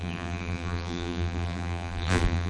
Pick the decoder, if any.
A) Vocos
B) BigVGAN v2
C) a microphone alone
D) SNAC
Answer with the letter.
B